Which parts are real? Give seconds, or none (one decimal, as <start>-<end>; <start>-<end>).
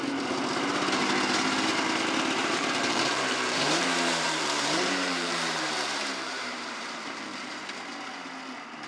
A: 0.0-2.4; 7.6-8.9